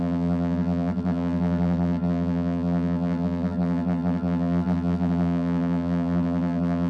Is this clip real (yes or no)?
no